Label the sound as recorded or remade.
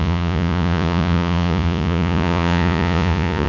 remade